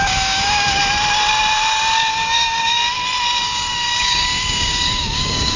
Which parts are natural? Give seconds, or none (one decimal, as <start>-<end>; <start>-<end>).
0.8-2.1; 2.8-3.4